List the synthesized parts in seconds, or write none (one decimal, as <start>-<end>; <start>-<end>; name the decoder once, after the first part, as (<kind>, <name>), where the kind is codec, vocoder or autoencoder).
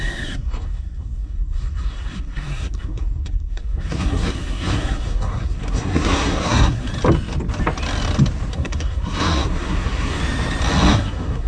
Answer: 0.0-6.9 (codec, SNAC); 8.5-10.2; 10.9-11.5